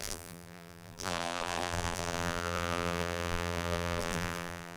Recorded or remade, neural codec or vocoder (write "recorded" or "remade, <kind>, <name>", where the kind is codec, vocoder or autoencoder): remade, vocoder, BigVGAN v2